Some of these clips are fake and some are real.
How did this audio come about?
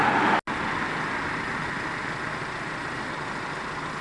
real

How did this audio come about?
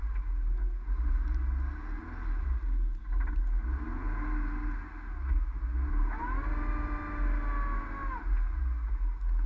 real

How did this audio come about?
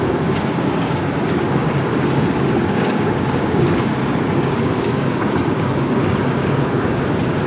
fake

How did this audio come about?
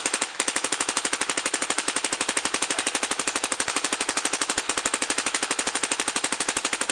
fake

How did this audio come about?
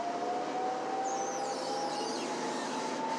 real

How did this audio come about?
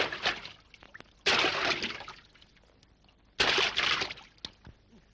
real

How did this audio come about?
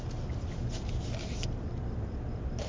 real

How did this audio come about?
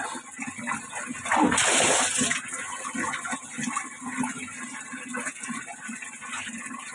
real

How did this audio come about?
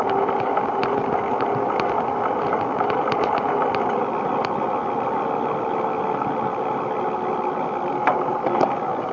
real